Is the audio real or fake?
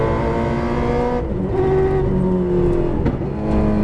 real